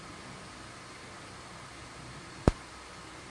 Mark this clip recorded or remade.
recorded